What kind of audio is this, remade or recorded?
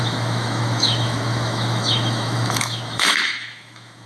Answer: remade